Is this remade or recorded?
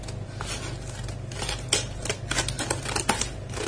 recorded